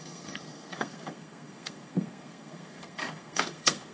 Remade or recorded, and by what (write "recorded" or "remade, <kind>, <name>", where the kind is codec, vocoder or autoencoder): remade, codec, SNAC